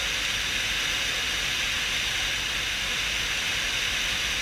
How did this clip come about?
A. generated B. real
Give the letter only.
B